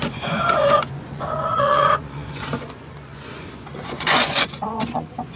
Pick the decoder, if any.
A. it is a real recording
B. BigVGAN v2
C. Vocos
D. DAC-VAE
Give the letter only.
C